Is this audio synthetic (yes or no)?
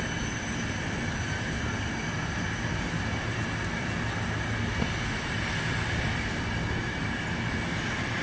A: no